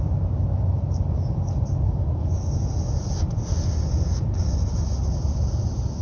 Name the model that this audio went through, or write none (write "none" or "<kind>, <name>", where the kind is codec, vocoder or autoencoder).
none